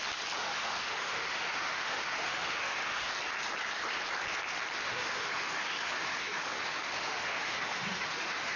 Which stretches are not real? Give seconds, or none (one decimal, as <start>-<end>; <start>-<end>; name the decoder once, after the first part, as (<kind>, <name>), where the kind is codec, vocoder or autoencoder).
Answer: 0.4-3.1 (autoencoder, DAC-VAE); 4.8-8.6